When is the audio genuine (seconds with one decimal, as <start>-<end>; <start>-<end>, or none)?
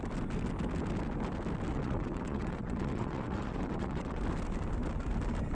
0.0-1.7; 4.2-5.5